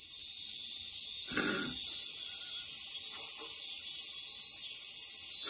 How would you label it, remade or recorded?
recorded